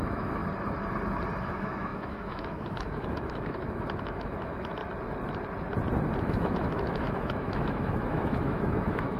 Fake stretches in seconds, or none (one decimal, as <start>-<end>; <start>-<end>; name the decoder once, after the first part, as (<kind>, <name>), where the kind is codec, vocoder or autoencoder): 0.0-0.4 (autoencoder, DAC-VAE); 1.4-4.8; 6.2-9.2